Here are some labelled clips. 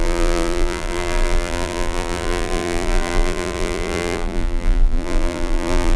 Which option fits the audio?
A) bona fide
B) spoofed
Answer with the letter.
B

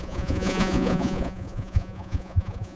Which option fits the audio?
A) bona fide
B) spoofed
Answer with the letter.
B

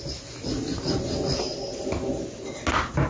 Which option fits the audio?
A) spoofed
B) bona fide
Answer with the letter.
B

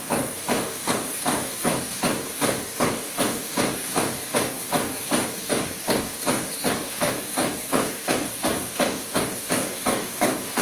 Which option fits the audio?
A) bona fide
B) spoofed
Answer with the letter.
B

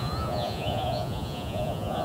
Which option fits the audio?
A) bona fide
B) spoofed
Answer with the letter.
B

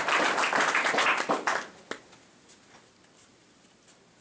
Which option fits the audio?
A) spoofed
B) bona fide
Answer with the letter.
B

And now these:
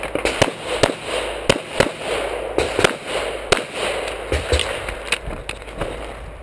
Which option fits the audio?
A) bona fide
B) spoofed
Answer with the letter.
A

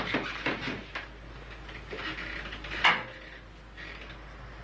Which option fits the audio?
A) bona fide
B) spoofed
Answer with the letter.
A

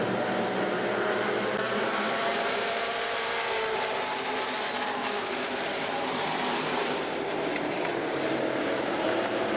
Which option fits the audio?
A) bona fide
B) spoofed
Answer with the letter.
B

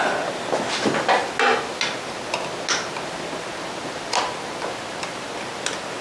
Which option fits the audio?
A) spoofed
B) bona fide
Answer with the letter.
B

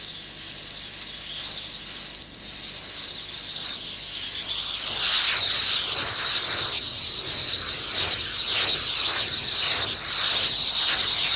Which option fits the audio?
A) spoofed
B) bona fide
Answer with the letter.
B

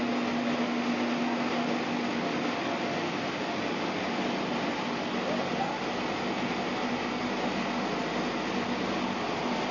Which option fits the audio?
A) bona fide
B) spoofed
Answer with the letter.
A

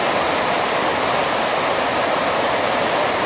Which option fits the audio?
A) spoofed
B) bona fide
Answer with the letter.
B